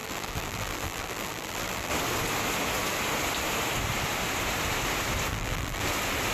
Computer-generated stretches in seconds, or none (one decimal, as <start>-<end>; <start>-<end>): 0.0-1.9; 5.3-5.8